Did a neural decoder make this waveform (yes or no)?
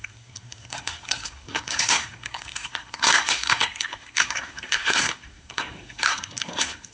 yes